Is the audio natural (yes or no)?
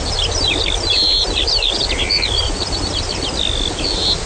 yes